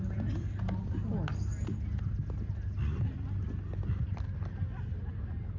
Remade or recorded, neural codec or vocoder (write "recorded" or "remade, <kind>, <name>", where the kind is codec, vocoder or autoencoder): recorded